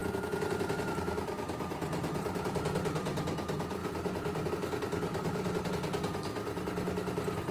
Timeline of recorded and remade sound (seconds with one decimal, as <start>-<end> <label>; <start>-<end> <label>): 0.0-3.2 remade; 3.2-3.8 recorded; 3.8-4.5 remade; 4.5-5.1 recorded; 5.1-5.7 remade; 5.7-7.5 recorded